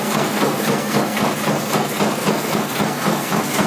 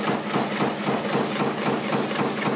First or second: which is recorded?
second